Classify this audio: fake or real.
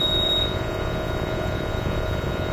fake